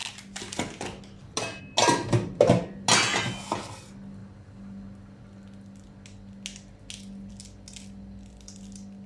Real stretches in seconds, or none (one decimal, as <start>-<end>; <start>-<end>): 0.0-9.1